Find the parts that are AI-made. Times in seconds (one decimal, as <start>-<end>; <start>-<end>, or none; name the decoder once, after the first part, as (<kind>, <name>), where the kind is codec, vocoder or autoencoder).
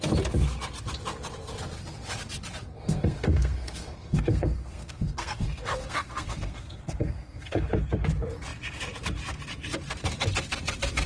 2.7-7.7 (codec, SNAC)